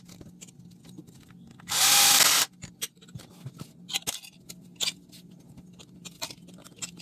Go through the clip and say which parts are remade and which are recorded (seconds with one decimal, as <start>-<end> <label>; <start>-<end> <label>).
0.0-7.0 recorded